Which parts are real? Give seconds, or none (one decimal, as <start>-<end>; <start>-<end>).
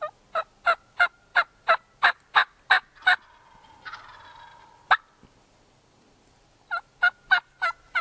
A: 0.0-8.0